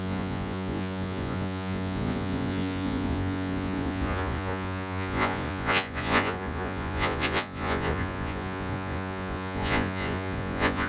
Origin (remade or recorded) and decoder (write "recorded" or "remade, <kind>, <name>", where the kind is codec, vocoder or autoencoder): remade, vocoder, Vocos